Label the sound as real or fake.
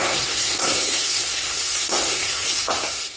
fake